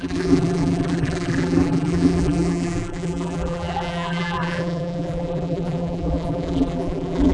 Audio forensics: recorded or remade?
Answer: remade